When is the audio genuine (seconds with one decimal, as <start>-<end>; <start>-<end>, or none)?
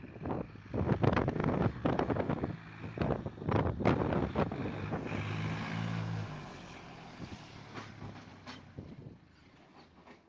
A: 0.0-10.3